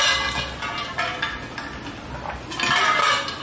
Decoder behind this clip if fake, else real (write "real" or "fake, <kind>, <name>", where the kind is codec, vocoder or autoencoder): real